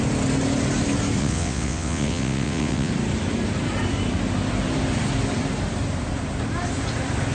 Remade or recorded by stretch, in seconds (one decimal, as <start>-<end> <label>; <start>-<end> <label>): 0.0-1.2 recorded; 1.2-2.9 remade; 2.9-7.3 recorded